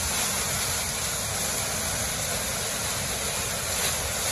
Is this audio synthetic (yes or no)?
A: no